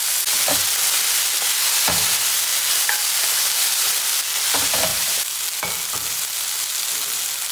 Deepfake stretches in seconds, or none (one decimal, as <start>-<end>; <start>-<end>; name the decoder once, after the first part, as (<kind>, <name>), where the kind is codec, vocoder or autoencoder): 2.5-3.6 (vocoder, BigVGAN v2); 4.9-5.7